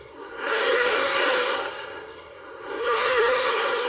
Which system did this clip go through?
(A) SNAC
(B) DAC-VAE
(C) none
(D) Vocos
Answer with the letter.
A